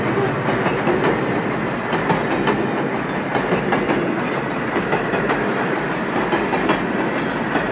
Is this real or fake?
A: real